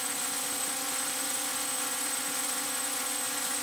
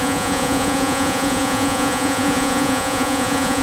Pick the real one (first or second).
first